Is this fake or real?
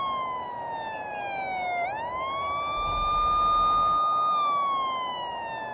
real